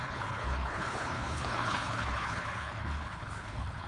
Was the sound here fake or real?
fake